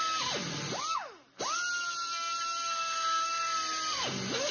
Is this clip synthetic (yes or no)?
no